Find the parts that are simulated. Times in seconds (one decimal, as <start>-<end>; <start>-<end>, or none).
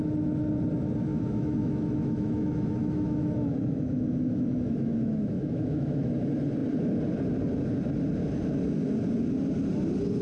1.1-6.1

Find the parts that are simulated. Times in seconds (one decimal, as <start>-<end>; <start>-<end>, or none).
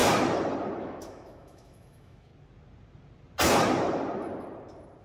0.8-2.3